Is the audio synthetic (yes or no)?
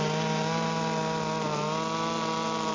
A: no